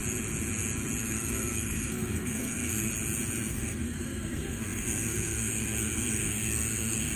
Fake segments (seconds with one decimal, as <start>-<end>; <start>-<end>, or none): 1.0-2.9; 3.5-7.2